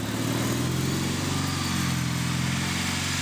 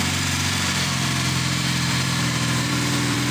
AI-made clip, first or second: second